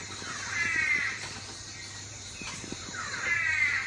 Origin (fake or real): fake